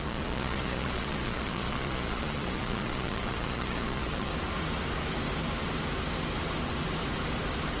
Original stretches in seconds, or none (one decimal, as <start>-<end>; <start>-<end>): 4.3-7.8